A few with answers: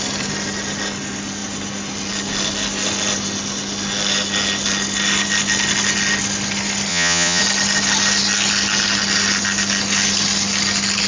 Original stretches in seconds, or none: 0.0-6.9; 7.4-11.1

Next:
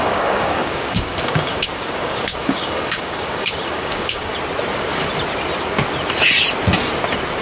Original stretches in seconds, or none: 4.3-7.4